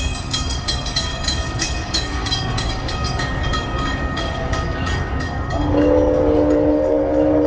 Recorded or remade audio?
remade